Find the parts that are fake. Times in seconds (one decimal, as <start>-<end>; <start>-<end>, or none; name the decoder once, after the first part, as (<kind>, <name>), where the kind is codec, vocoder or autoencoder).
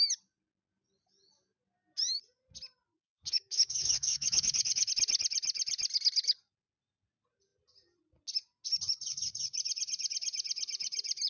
2.9-4.9 (autoencoder, DAC-VAE)